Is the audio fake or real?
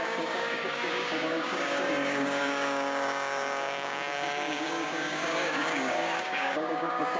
fake